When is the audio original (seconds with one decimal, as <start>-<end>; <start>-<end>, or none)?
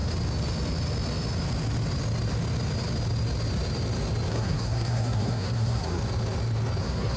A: 0.0-4.3; 6.0-6.8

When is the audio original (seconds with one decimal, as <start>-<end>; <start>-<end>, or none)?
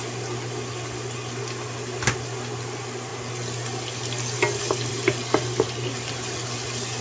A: 0.0-7.0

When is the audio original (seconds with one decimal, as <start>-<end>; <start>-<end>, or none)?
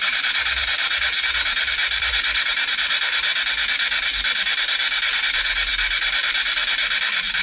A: 3.3-5.2; 5.7-7.4